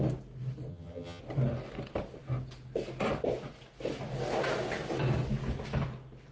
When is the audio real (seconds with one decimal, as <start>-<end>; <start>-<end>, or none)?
0.0-0.7; 1.2-6.3